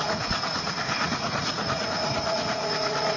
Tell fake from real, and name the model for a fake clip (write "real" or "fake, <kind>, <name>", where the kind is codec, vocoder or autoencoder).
fake, vocoder, Vocos